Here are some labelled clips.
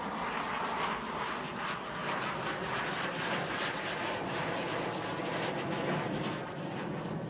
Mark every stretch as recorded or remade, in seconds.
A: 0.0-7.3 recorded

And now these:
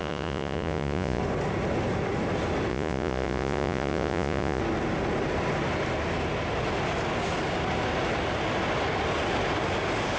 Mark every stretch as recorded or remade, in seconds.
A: 0.0-1.2 remade; 1.2-2.7 recorded; 2.7-4.6 remade; 4.6-10.2 recorded